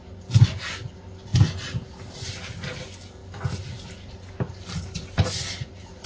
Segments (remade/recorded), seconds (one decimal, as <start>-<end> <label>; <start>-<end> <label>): 0.0-3.2 recorded; 3.2-5.3 remade; 5.3-6.1 recorded